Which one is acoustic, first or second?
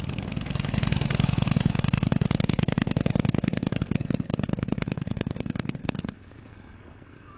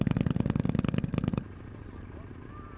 second